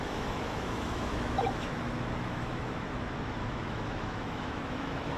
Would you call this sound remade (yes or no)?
yes